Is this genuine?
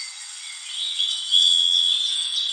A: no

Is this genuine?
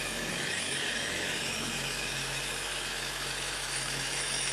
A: no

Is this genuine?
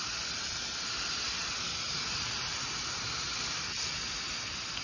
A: yes